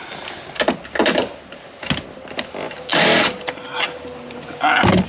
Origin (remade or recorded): recorded